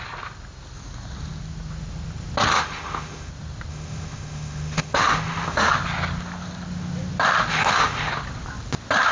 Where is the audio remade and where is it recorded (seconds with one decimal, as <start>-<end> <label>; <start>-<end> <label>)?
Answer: 0.0-2.5 recorded; 2.5-3.3 remade; 3.3-3.7 recorded; 3.7-5.7 remade; 5.7-7.5 recorded; 7.5-8.1 remade; 8.1-9.1 recorded